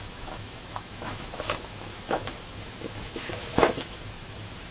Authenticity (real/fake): fake